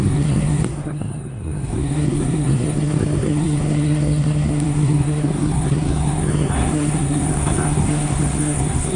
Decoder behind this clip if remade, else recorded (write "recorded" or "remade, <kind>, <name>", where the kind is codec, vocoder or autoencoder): remade, codec, SNAC